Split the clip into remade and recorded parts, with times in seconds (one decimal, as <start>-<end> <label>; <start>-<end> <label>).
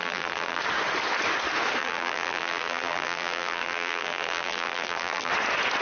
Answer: 0.0-0.6 remade; 0.6-1.8 recorded; 1.8-5.3 remade; 5.3-5.8 recorded